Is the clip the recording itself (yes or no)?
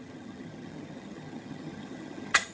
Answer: no